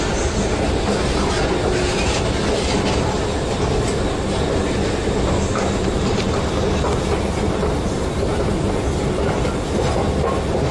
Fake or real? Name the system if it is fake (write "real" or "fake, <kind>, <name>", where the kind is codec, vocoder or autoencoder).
real